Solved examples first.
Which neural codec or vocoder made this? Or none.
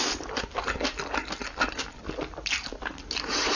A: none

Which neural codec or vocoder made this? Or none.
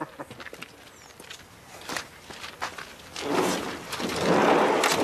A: none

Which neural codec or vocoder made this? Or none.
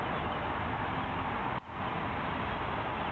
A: none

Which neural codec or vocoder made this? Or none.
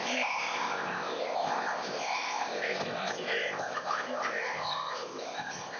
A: codec, ZipCodec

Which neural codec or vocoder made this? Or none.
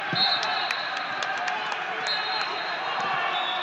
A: none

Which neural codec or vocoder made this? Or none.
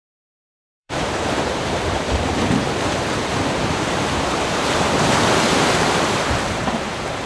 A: vocoder, BigVGAN v2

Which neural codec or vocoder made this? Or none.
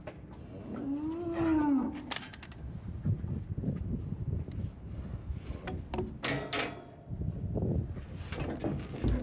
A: none